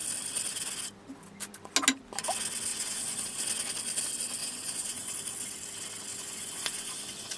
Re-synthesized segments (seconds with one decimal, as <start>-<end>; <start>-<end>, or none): 2.7-3.4; 4.4-5.1; 6.1-7.4